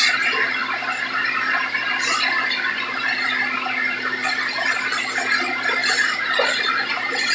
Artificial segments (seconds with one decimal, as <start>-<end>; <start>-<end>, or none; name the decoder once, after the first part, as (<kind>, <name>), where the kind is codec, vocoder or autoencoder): 0.6-2.7 (vocoder, BigVGAN v2); 4.2-5.2